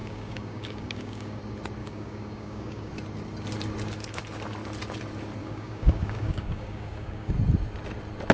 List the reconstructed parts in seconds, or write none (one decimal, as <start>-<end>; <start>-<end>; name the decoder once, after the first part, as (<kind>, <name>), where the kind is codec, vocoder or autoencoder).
0.0-1.4 (codec, DAC); 1.8-2.9; 5.4-7.3